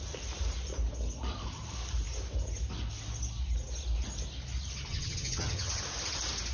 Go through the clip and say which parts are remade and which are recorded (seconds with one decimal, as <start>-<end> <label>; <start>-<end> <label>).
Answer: 0.0-4.9 recorded; 4.9-5.8 remade; 5.8-6.5 recorded